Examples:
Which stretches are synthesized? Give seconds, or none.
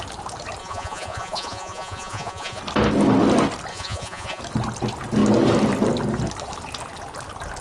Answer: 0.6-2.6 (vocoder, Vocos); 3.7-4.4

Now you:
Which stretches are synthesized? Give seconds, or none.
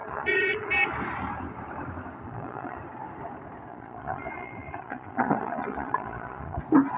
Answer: 0.0-0.7 (vocoder, Vocos); 2.2-2.8; 3.7-6.6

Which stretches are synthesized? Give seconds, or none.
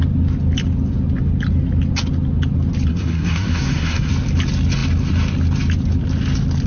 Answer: 2.9-4.1 (codec, SNAC)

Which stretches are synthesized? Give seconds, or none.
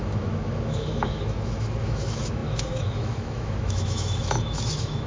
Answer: 0.0-5.1 (autoencoder, DAC-VAE)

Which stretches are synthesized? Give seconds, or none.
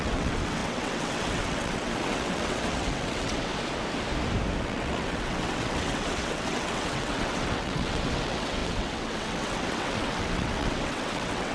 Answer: 0.0-3.5 (vocoder, WaveNeXt); 4.6-11.5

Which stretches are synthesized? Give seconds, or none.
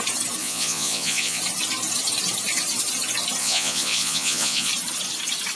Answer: 0.4-1.4 (vocoder, Vocos); 3.4-4.7